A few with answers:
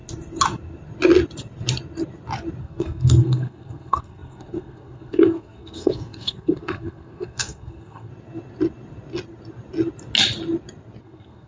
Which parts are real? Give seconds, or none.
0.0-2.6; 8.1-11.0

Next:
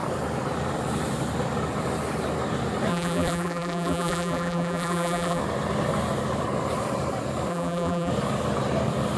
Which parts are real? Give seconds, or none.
0.0-2.9; 5.4-7.5; 8.1-9.2

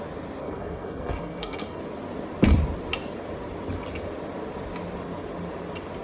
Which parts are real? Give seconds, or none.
0.0-0.4; 1.8-6.0